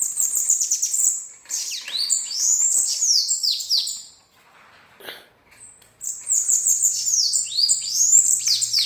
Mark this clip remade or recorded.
remade